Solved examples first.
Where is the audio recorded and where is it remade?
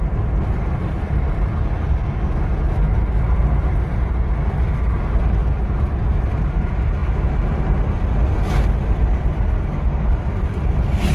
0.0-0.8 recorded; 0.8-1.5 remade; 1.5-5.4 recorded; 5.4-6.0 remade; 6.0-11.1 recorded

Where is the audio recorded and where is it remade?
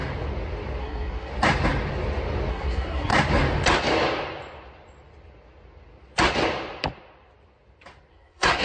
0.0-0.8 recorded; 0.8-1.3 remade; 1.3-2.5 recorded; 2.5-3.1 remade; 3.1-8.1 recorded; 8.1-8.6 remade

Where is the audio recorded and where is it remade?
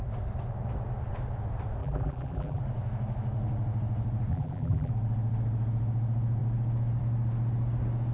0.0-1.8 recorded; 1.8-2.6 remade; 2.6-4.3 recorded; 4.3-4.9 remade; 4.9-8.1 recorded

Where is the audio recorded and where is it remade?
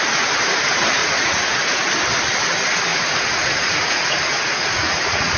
0.0-1.0 recorded; 1.0-1.9 remade; 1.9-2.9 recorded; 2.9-5.4 remade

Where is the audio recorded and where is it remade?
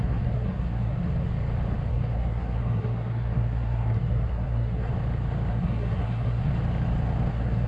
0.0-1.1 remade; 1.1-1.9 recorded; 1.9-4.9 remade; 4.9-5.5 recorded; 5.5-6.5 remade; 6.5-7.3 recorded; 7.3-7.7 remade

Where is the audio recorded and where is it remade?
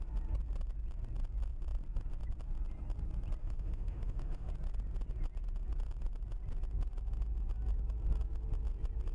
0.0-3.4 recorded; 3.4-4.5 remade; 4.5-9.1 recorded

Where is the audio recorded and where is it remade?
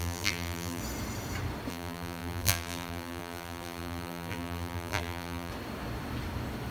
0.0-0.8 remade; 0.8-1.7 recorded; 1.7-5.5 remade; 5.5-6.7 recorded